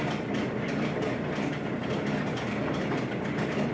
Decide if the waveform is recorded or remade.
remade